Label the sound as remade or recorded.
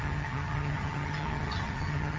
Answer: remade